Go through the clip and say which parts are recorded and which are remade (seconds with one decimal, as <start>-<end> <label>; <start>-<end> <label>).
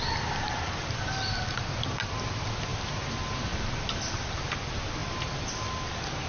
0.0-6.3 recorded